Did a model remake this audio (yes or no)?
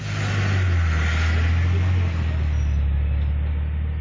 no